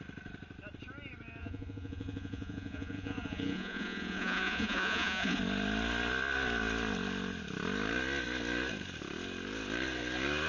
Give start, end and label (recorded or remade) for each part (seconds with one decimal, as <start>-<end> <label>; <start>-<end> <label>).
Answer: 0.0-1.4 recorded; 1.4-5.4 remade; 5.4-10.5 recorded